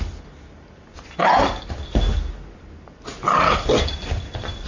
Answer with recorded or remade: recorded